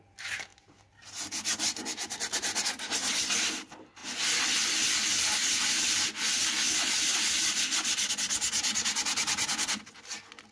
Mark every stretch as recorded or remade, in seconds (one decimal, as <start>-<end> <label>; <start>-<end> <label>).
0.0-10.5 recorded